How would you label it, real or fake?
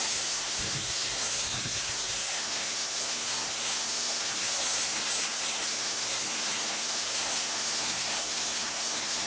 fake